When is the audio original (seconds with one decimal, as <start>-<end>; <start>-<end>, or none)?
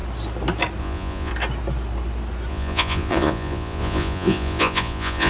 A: 0.0-0.8; 1.3-2.5